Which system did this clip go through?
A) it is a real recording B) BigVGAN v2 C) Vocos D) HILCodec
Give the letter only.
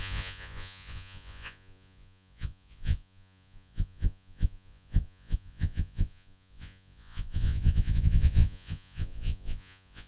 C